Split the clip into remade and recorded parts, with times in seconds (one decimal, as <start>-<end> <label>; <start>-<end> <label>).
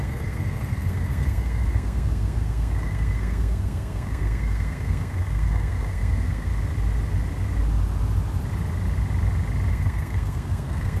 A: 0.0-6.5 remade; 6.5-9.7 recorded; 9.7-11.0 remade